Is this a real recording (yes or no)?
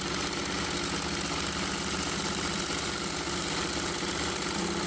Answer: yes